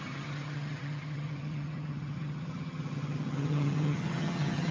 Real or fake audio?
fake